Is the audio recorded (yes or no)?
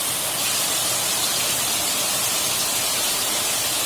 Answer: no